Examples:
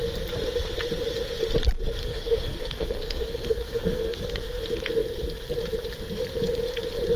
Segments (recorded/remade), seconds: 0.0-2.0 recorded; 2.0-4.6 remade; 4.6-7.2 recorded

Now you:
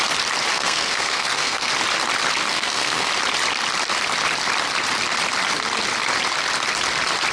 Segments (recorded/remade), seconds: 0.0-0.5 recorded; 0.5-1.7 remade; 1.7-2.5 recorded; 2.5-3.1 remade; 3.1-7.3 recorded

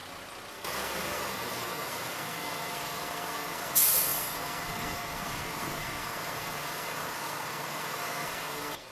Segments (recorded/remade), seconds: 0.0-0.5 recorded; 0.5-8.9 remade

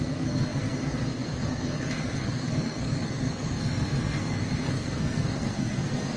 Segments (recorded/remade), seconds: 0.0-6.2 remade

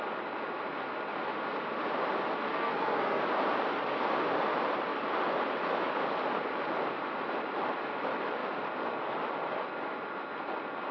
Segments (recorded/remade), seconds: 0.0-2.5 recorded; 2.5-3.2 remade; 3.2-10.9 recorded

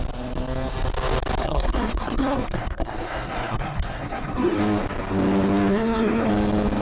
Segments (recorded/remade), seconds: 0.0-1.4 recorded; 1.4-4.6 remade; 4.6-5.7 recorded; 5.7-6.3 remade; 6.3-6.8 recorded

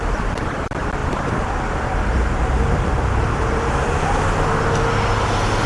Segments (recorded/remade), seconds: 0.0-5.7 recorded